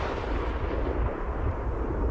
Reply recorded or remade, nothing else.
recorded